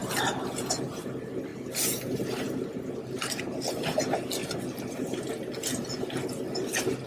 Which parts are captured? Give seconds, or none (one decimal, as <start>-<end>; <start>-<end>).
0.0-4.4; 5.4-7.1